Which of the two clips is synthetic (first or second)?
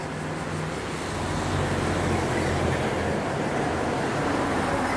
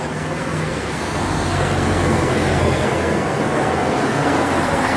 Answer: second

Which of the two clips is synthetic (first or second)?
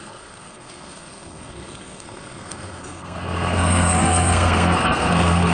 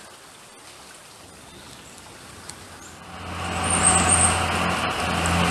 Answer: first